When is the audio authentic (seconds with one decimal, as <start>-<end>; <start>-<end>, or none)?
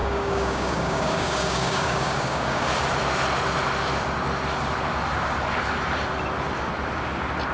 2.7-7.5